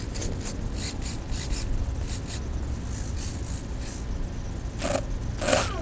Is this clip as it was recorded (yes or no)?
yes